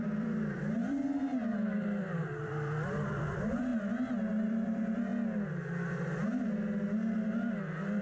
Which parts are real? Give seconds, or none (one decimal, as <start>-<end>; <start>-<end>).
3.7-4.5; 5.1-8.0